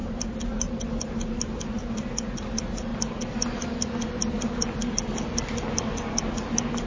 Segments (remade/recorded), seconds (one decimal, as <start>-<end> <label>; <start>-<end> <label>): 0.0-6.9 recorded